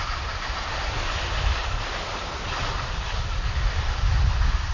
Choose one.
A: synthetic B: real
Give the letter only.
B